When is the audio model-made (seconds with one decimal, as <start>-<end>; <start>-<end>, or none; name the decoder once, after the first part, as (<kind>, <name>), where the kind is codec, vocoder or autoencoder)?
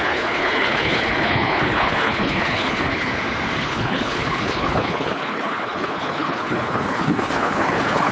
0.0-3.1 (codec, HILCodec); 3.6-8.1